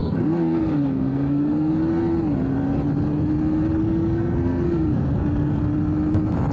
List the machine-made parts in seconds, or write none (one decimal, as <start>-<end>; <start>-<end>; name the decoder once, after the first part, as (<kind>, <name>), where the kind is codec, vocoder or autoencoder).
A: 0.0-1.7 (codec, SNAC); 3.8-5.6